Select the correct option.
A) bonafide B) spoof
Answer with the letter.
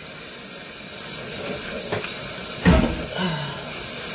A